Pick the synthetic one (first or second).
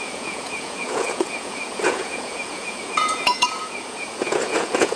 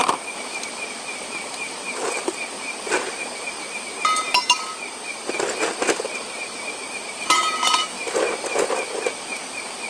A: first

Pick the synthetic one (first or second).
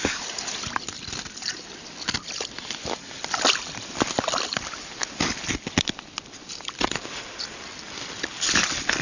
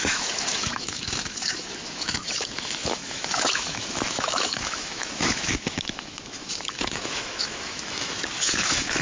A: second